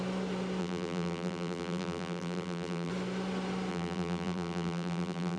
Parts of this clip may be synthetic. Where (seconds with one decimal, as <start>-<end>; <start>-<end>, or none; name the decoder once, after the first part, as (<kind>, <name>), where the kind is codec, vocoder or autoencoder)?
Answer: 0.6-2.9 (vocoder, BigVGAN v2); 3.7-5.4